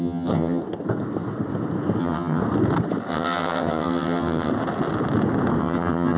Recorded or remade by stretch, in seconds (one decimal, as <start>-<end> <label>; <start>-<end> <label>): 0.0-0.6 remade; 0.6-2.0 recorded; 2.0-2.4 remade; 2.4-3.1 recorded; 3.1-4.5 remade; 4.5-5.6 recorded; 5.6-6.2 remade